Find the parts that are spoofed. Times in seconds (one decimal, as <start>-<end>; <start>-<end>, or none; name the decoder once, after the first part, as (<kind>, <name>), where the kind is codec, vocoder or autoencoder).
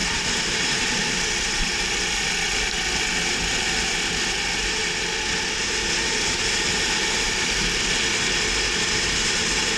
0.0-1.9 (vocoder, BigVGAN v2)